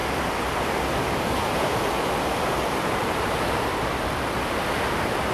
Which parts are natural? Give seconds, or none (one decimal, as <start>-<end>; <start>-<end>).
0.0-5.3